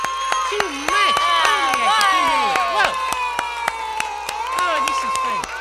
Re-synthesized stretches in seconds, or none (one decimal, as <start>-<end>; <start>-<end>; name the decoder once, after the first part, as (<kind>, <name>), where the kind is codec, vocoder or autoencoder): 3.9-5.6 (vocoder, BigVGAN v2)